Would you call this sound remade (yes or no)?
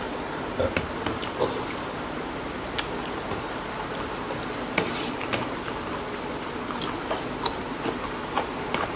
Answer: no